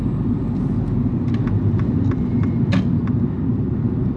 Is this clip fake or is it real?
real